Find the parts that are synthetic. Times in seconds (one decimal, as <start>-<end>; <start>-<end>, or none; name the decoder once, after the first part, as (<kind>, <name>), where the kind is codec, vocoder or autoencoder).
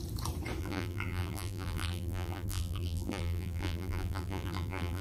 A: 0.6-5.0 (vocoder, BigVGAN v2)